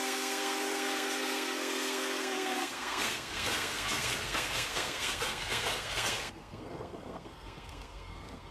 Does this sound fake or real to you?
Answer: fake